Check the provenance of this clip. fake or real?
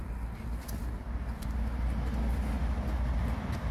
real